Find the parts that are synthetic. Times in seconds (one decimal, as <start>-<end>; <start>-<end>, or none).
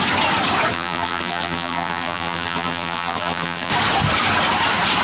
0.7-3.7